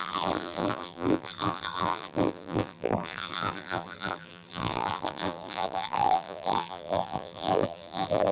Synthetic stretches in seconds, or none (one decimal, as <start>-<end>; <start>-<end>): 0.0-8.3